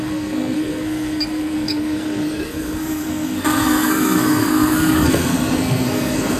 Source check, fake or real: fake